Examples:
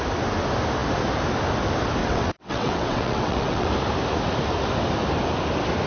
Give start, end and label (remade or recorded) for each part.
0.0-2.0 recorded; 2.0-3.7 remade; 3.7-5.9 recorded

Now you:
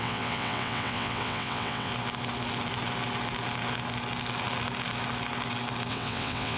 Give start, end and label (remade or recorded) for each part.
0.0-1.9 remade; 1.9-5.9 recorded; 5.9-6.6 remade

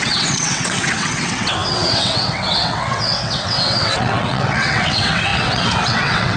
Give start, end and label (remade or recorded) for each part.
0.0-6.4 remade

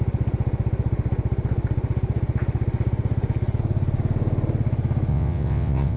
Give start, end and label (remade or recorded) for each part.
0.0-5.1 recorded; 5.1-6.0 remade